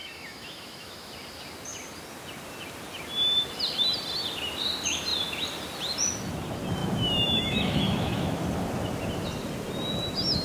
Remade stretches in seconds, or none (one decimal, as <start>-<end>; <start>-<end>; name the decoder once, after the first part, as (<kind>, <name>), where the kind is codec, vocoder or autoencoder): 0.0-1.1 (autoencoder, DAC-VAE); 6.8-8.4